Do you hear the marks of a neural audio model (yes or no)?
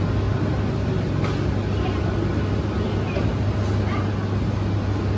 no